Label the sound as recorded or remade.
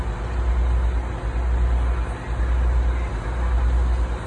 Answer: recorded